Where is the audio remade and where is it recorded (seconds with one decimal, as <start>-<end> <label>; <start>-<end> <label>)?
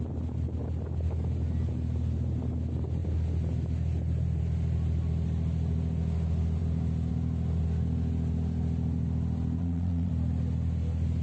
0.0-9.6 recorded; 9.6-10.1 remade; 10.1-11.2 recorded